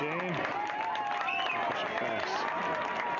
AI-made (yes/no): no